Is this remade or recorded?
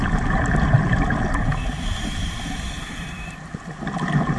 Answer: recorded